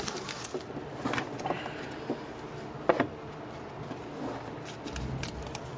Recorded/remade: recorded